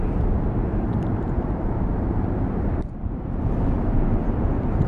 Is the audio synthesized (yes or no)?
yes